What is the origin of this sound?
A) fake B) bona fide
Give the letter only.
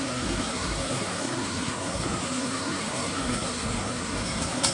A